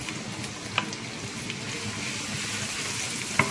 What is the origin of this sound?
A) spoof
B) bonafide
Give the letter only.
B